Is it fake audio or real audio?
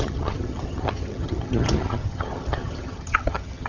fake